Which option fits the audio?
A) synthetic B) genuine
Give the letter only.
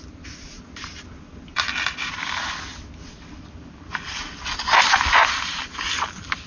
B